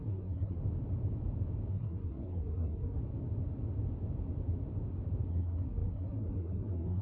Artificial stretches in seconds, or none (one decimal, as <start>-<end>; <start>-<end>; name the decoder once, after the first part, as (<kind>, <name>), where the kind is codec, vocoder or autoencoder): 0.0-0.6 (codec, SNAC); 1.7-3.0; 5.3-7.0